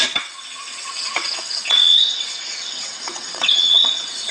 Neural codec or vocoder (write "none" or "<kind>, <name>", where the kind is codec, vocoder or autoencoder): vocoder, WaveNeXt